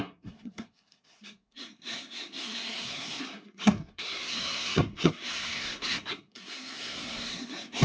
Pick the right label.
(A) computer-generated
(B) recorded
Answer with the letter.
A